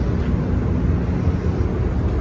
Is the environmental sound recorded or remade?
recorded